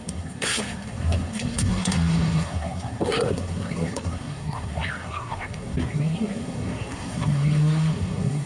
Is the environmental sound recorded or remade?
remade